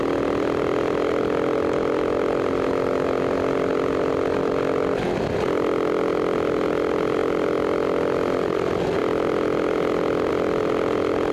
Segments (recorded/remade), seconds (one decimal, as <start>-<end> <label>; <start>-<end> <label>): 0.0-11.3 recorded